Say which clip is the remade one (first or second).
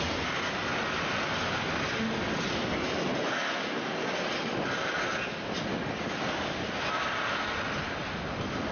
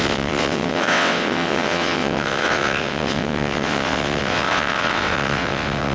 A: second